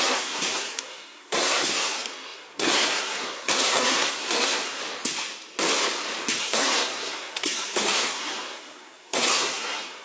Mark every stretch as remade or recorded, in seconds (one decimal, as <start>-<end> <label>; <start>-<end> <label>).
0.0-4.8 remade; 4.8-6.4 recorded; 6.4-10.0 remade